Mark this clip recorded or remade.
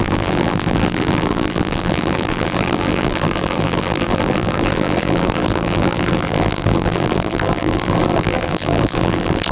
remade